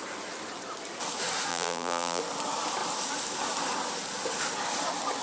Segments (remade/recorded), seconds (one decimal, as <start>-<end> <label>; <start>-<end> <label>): 0.0-1.5 recorded; 1.5-2.2 remade; 2.2-5.2 recorded